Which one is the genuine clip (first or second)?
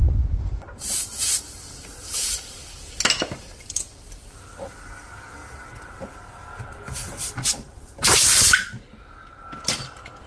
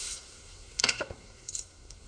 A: first